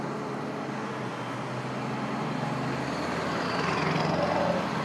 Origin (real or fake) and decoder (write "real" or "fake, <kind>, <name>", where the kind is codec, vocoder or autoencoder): real